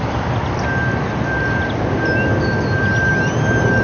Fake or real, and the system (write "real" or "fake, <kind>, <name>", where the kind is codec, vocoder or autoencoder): real